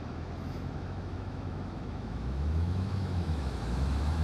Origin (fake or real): fake